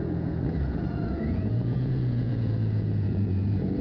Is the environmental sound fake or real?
fake